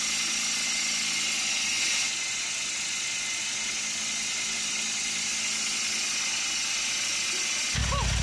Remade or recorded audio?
recorded